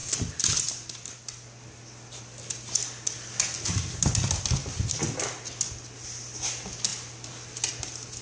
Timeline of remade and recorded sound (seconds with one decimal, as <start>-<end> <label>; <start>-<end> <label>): 0.0-8.2 recorded